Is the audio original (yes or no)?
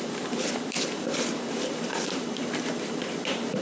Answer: no